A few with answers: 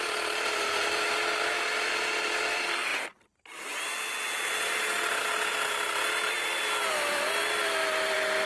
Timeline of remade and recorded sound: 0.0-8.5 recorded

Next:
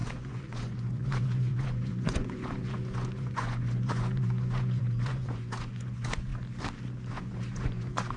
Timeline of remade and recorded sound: 0.0-6.3 remade; 6.3-7.1 recorded; 7.1-8.2 remade

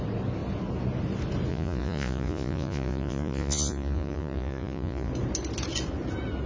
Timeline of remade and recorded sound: 0.0-1.5 recorded; 1.5-5.1 remade; 5.1-6.5 recorded